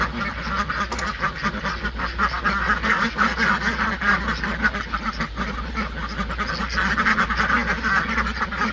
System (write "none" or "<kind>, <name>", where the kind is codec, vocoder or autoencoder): none